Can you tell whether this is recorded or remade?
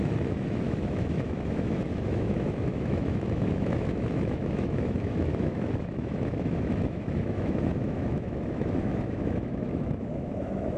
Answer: remade